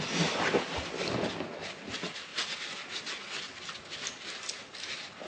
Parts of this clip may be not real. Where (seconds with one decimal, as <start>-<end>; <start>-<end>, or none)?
none